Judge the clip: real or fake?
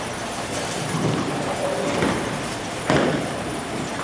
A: fake